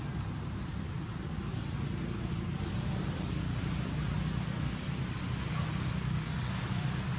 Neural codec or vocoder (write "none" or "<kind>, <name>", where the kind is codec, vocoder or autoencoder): none